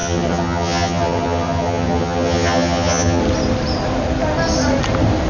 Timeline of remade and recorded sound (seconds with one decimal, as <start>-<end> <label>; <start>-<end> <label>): 0.0-3.2 remade; 3.2-5.3 recorded